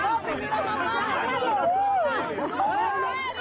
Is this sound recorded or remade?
recorded